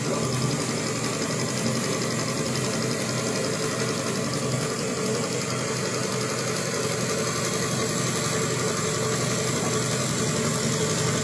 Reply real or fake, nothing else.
real